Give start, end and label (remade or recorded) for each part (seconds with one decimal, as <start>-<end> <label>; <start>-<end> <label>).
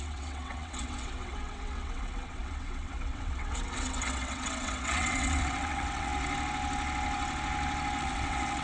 0.0-6.1 remade; 6.1-8.0 recorded; 8.0-8.6 remade